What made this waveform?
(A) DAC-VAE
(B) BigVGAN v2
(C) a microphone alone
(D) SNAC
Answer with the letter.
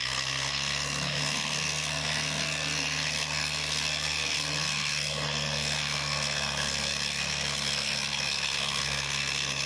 D